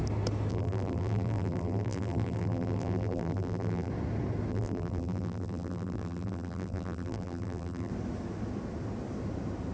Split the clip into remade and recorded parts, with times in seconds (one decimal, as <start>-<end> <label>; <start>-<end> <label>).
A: 0.0-0.5 recorded; 0.5-3.9 remade; 3.9-4.5 recorded; 4.5-7.9 remade; 7.9-9.7 recorded